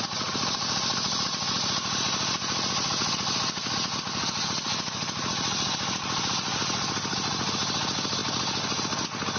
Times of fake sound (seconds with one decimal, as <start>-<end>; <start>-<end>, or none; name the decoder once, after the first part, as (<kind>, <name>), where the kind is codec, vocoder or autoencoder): none